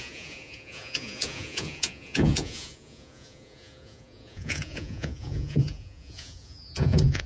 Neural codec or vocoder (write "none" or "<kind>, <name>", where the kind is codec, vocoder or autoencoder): vocoder, Vocos